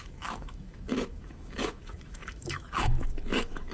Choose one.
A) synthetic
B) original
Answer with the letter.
A